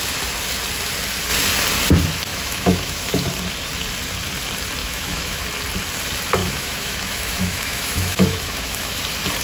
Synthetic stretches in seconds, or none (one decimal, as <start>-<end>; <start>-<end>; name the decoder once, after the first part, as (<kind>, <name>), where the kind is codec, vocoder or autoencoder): 2.3-3.3 (autoencoder, DAC-VAE); 4.8-5.4; 6.4-9.0

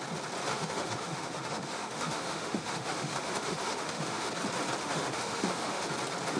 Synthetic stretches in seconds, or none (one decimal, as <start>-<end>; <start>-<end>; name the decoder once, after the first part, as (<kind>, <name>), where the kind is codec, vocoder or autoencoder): 0.5-4.3 (autoencoder, DAC-VAE); 4.8-5.9